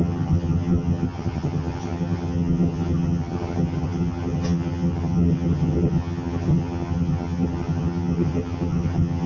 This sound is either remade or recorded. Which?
remade